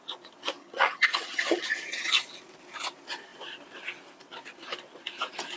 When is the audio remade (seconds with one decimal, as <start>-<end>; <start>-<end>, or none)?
0.6-2.1